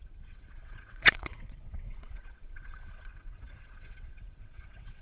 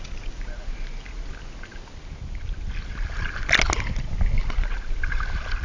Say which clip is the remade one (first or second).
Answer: first